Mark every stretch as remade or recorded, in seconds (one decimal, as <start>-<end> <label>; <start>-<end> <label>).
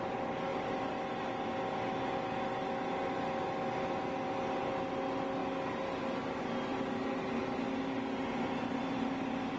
0.0-9.6 recorded